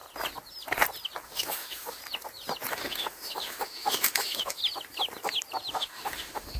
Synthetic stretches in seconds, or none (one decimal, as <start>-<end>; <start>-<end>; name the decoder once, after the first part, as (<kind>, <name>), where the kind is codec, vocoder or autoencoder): 1.2-2.0 (autoencoder, DAC-VAE); 2.7-4.6; 5.7-6.6